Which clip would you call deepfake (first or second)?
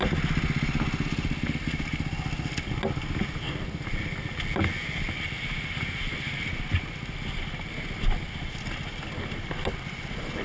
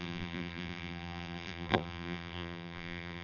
second